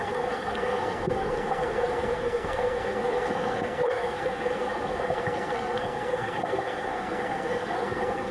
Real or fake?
fake